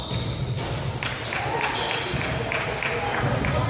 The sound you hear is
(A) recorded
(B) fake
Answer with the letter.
A